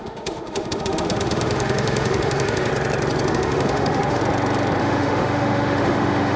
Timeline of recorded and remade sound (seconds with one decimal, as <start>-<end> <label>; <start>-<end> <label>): 0.0-2.7 remade; 2.7-3.3 recorded; 3.3-4.2 remade; 4.2-4.8 recorded; 4.8-6.4 remade